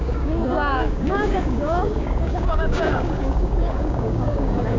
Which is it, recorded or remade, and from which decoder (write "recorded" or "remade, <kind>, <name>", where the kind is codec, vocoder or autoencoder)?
remade, codec, DAC